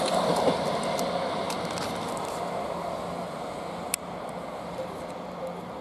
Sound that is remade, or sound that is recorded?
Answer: recorded